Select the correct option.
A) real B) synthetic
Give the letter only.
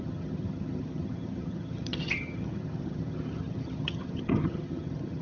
B